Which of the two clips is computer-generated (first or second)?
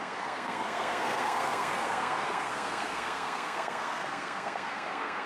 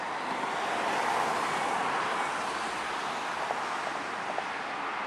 first